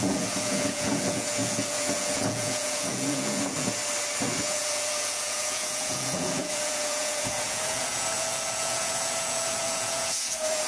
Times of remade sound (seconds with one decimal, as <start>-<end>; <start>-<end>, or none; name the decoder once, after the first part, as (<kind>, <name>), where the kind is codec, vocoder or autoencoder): 0.0-3.8 (vocoder, Vocos); 4.4-10.7